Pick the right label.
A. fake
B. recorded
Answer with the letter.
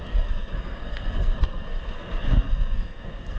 A